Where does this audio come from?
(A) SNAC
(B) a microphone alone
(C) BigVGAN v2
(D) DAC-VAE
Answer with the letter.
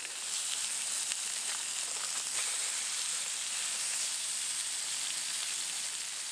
B